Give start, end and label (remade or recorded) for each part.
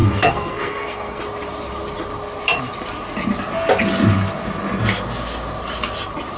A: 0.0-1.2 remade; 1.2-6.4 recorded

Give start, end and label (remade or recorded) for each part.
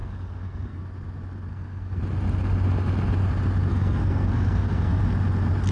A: 0.0-0.8 remade; 0.8-1.5 recorded; 1.5-2.0 remade; 2.0-3.7 recorded; 3.7-5.0 remade; 5.0-5.7 recorded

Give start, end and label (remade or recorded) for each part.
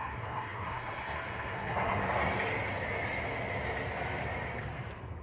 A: 0.0-2.0 remade; 2.0-5.2 recorded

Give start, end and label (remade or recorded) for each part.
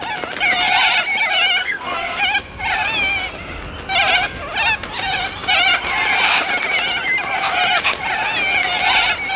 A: 0.0-1.6 recorded; 1.6-2.2 remade; 2.2-9.4 recorded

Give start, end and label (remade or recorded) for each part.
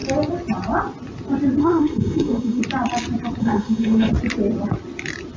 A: 0.0-1.6 recorded; 1.6-2.6 remade; 2.6-3.4 recorded; 3.4-4.1 remade; 4.1-5.4 recorded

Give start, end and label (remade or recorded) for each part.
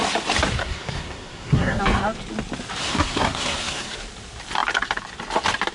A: 0.0-0.6 recorded; 0.6-1.8 remade; 1.8-2.8 recorded; 2.8-3.9 remade; 3.9-5.7 recorded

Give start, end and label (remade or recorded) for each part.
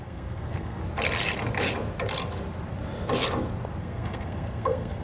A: 0.0-0.8 remade; 0.8-3.8 recorded; 3.8-5.0 remade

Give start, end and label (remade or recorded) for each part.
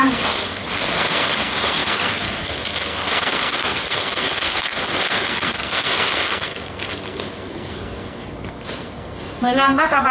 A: 0.0-10.1 remade